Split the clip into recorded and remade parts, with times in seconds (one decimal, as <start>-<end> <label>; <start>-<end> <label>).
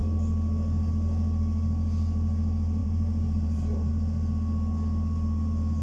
0.0-2.8 recorded; 2.8-3.9 remade; 3.9-5.8 recorded